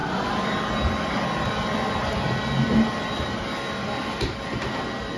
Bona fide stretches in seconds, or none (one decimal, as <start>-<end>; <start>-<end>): 0.0-5.2